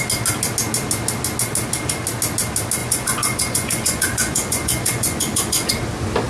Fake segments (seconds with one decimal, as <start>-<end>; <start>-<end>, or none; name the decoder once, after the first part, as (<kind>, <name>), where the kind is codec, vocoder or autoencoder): 2.8-5.7 (vocoder, Vocos)